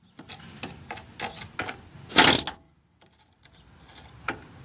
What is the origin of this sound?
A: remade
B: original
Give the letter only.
B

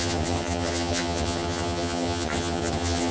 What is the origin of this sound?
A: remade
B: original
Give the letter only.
A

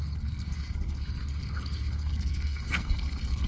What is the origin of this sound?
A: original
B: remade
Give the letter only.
B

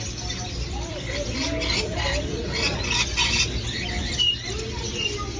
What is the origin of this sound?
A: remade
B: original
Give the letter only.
A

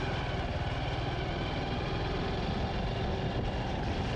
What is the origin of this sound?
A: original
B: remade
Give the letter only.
A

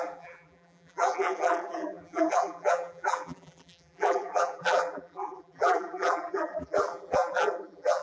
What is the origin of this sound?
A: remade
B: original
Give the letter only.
A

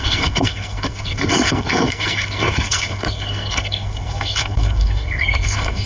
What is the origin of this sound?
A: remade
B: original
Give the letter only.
A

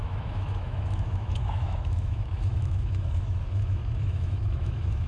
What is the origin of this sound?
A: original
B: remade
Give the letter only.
B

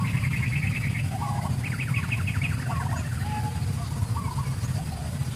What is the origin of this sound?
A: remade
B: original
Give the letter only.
B